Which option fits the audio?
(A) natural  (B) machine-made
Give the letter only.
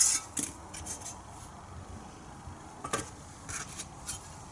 A